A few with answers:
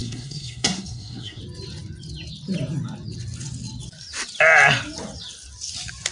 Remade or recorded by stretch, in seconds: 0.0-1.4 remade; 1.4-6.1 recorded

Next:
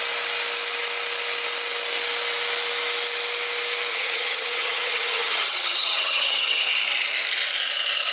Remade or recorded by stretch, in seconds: 0.0-3.9 recorded; 3.9-6.7 remade; 6.7-8.1 recorded

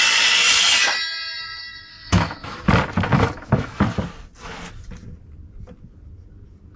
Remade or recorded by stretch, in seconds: 0.0-1.9 recorded; 1.9-2.6 remade; 2.6-3.1 recorded; 3.1-3.8 remade; 3.8-6.8 recorded

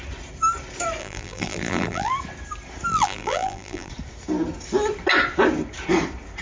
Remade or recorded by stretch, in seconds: 0.0-1.0 recorded; 1.0-2.1 remade; 2.1-2.9 recorded; 2.9-3.9 remade; 3.9-6.4 recorded

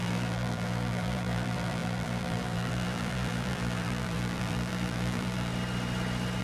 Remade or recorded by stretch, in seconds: 0.0-5.5 remade; 5.5-6.4 recorded

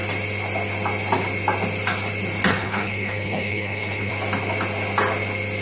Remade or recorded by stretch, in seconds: 0.0-2.5 recorded; 2.5-4.1 remade; 4.1-5.6 recorded

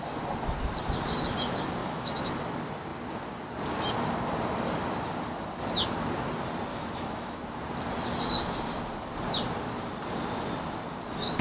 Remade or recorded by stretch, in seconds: 0.0-1.8 recorded; 1.8-2.3 remade; 2.3-6.7 recorded; 6.7-7.4 remade; 7.4-11.4 recorded

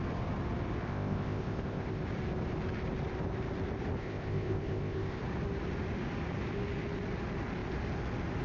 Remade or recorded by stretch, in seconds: 0.0-0.9 recorded; 0.9-2.0 remade; 2.0-4.0 recorded; 4.0-5.2 remade; 5.2-8.4 recorded